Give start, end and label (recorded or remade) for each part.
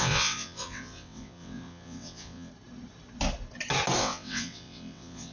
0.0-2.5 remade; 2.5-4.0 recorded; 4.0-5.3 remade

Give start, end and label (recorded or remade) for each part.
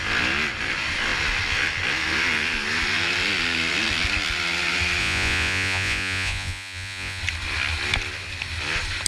0.0-5.0 recorded; 5.0-7.2 remade; 7.2-9.1 recorded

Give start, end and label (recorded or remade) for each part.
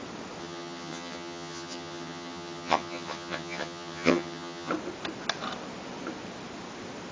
0.0-0.4 recorded; 0.4-4.7 remade; 4.7-7.1 recorded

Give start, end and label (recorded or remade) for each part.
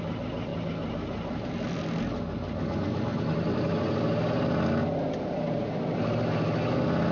0.0-7.1 recorded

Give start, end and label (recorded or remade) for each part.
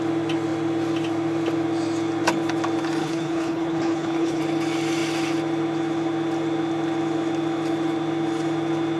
0.0-3.0 recorded; 3.0-4.4 remade; 4.4-9.0 recorded